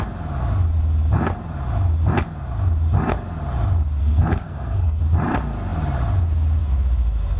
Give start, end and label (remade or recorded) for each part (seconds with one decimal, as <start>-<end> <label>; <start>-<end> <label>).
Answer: 0.0-4.0 recorded; 4.0-5.0 remade; 5.0-7.4 recorded

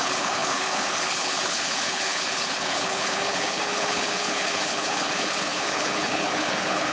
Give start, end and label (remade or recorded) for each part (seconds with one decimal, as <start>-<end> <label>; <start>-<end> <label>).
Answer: 0.0-6.9 remade

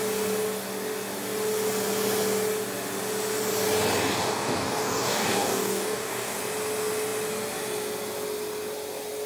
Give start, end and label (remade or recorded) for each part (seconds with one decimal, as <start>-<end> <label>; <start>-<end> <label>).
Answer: 0.0-4.2 recorded; 4.2-6.4 remade; 6.4-9.3 recorded

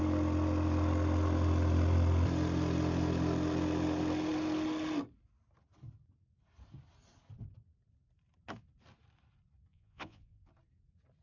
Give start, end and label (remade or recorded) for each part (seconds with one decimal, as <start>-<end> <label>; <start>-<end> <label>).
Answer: 0.0-9.7 recorded; 9.7-10.5 remade; 10.5-11.2 recorded

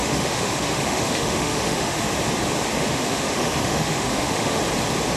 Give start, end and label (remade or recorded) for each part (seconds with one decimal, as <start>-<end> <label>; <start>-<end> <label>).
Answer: 0.0-2.1 remade; 2.1-2.7 recorded; 2.7-4.6 remade; 4.6-5.2 recorded

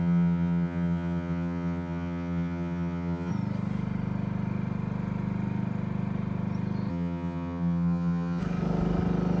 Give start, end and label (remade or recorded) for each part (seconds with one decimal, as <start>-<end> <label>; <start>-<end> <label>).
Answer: 0.0-3.3 remade; 3.3-6.9 recorded; 6.9-8.4 remade; 8.4-9.4 recorded

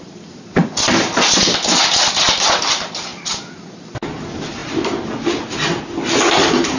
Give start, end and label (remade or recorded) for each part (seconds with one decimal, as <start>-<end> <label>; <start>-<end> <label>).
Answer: 0.0-6.8 recorded

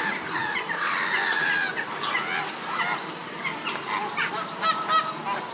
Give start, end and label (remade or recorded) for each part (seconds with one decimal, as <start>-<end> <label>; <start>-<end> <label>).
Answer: 0.0-5.5 recorded